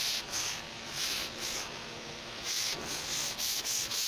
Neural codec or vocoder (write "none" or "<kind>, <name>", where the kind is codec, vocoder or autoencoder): codec, SNAC